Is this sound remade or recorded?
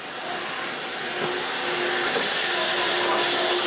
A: recorded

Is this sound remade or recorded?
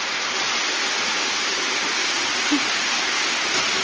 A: recorded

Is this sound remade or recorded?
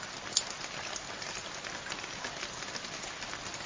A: recorded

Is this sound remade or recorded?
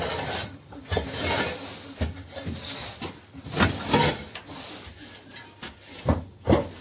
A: recorded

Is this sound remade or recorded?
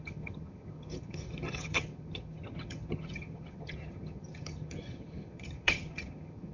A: remade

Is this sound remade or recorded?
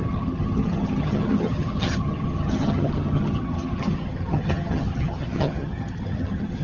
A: remade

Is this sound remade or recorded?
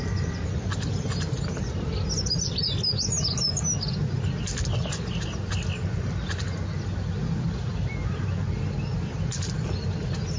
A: recorded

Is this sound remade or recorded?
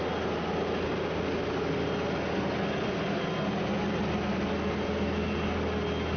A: recorded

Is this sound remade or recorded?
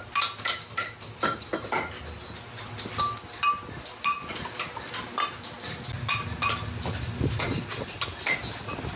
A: recorded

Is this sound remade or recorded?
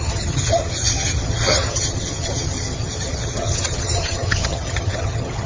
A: remade